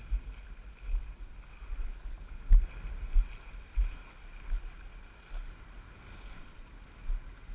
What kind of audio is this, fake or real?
real